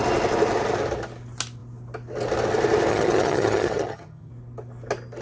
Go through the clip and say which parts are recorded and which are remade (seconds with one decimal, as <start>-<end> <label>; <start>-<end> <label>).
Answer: 0.0-2.9 recorded; 2.9-4.3 remade; 4.3-5.2 recorded